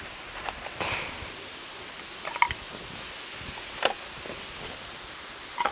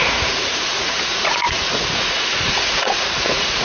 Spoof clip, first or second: second